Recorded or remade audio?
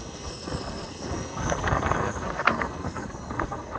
remade